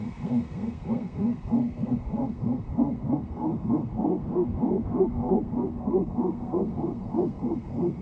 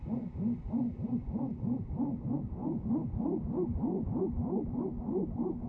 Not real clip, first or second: first